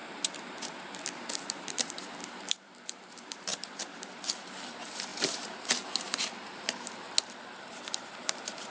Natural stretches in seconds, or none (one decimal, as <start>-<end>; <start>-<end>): 0.0-1.3; 3.5-4.4; 7.1-7.7